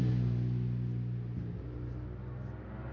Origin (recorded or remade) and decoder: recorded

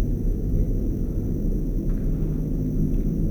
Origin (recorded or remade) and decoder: recorded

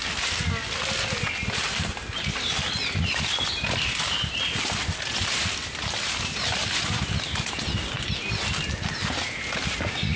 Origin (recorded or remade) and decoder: recorded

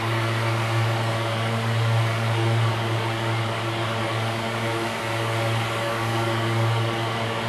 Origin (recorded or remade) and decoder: remade, codec, DAC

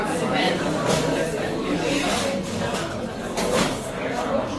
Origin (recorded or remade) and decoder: remade, codec, DAC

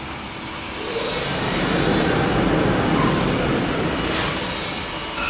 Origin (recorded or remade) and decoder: recorded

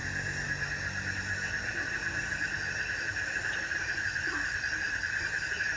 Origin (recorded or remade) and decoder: recorded